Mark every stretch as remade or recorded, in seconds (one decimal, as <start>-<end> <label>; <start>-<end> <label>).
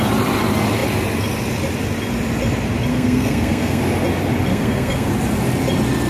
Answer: 0.0-2.9 recorded; 2.9-3.8 remade; 3.8-4.5 recorded; 4.5-5.1 remade; 5.1-6.1 recorded